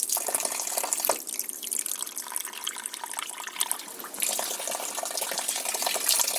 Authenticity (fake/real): real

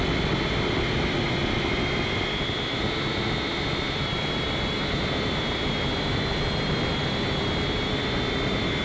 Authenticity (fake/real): real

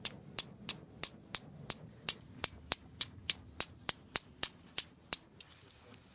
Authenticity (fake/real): real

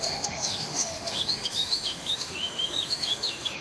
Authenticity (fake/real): fake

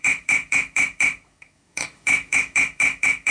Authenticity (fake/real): fake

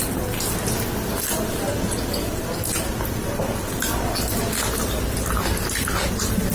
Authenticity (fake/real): real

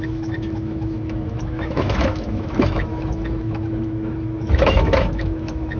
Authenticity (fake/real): fake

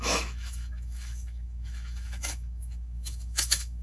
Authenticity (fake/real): fake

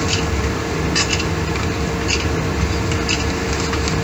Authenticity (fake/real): real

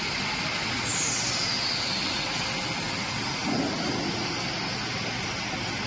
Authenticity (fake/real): real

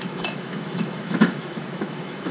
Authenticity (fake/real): fake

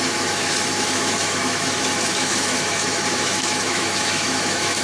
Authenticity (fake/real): fake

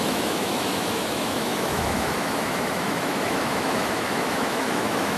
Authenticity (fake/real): fake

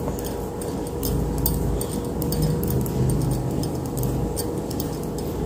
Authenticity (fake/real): real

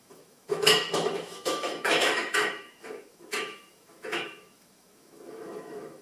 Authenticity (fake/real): fake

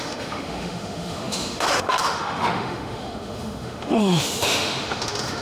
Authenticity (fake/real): fake